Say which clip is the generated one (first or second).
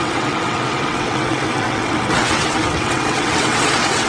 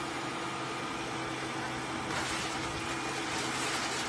first